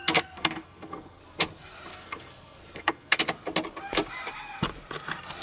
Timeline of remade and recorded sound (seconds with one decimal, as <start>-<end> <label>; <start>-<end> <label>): 0.0-1.2 remade; 1.2-1.9 recorded; 1.9-3.2 remade; 3.2-5.4 recorded